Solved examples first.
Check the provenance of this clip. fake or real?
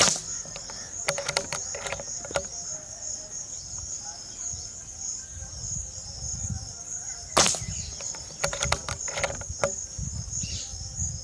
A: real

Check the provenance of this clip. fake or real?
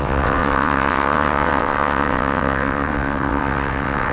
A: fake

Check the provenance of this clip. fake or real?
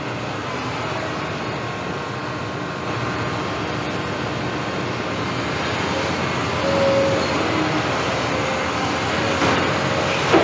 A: real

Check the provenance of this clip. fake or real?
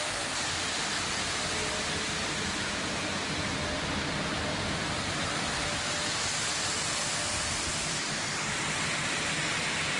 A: real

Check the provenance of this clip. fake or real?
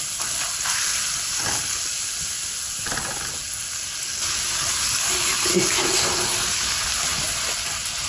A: real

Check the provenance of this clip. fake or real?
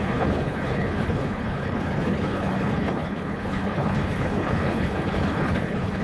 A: fake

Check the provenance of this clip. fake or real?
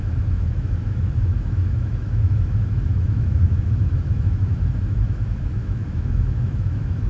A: fake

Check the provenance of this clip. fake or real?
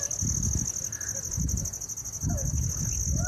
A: real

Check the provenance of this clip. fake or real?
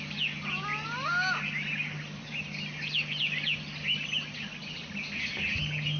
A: real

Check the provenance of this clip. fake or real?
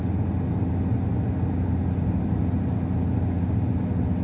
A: real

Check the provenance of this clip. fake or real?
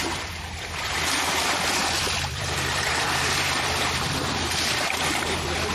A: fake